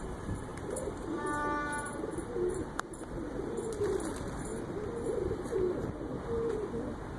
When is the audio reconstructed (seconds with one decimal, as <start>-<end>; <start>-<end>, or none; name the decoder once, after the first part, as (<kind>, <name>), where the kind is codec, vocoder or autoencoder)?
0.0-4.5 (vocoder, BigVGAN v2)